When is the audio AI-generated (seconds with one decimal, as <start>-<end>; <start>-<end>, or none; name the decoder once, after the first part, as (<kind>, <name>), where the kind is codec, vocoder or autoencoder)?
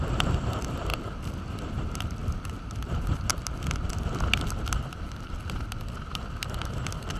0.0-2.2 (vocoder, BigVGAN v2); 2.7-3.3; 4.7-7.2